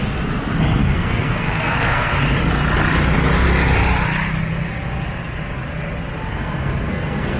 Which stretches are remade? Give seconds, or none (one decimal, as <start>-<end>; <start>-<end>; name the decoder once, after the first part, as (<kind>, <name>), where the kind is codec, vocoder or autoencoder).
0.8-2.2 (codec, SNAC); 6.3-7.4